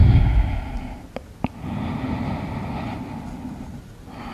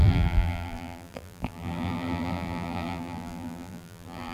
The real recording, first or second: first